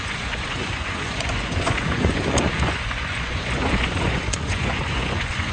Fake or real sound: fake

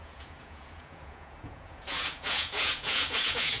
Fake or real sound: fake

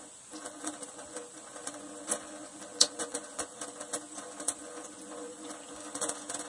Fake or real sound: fake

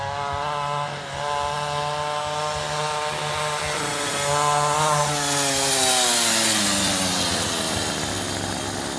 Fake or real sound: real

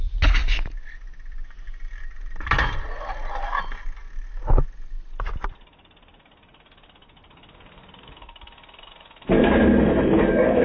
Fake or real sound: real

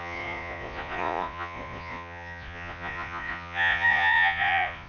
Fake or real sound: fake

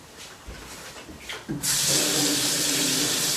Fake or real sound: real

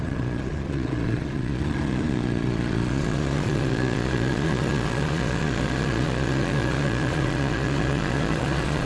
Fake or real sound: fake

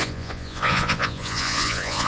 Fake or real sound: fake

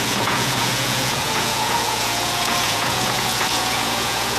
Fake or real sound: fake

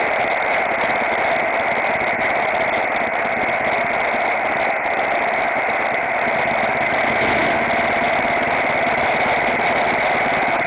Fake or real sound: real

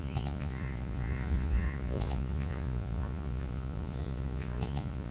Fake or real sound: fake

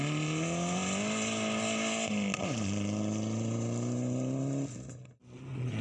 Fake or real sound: real